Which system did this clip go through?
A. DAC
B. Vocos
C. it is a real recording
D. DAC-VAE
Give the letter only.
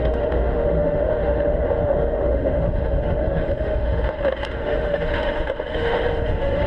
D